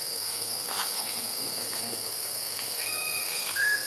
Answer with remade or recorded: remade